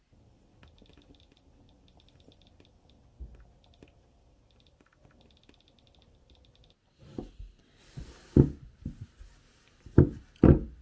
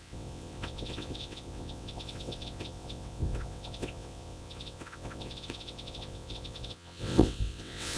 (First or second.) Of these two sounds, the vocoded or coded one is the second